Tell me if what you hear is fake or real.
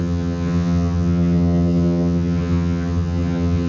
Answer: fake